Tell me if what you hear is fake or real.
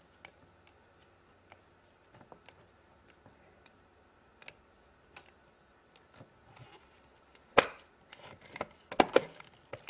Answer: real